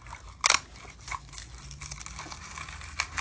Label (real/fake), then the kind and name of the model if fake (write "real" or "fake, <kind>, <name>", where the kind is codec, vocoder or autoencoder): real